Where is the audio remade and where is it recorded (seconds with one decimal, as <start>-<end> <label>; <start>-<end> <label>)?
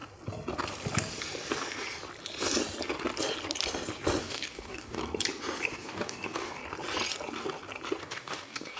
0.0-4.2 recorded; 4.2-5.0 remade; 5.0-5.7 recorded; 5.7-6.6 remade; 6.6-8.0 recorded; 8.0-8.8 remade